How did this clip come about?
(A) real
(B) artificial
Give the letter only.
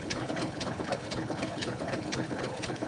B